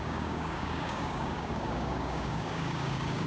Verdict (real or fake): fake